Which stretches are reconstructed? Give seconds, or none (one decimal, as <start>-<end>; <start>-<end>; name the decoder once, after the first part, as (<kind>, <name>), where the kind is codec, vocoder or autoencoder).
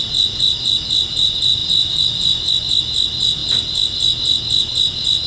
none